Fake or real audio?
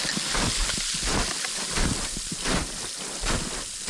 real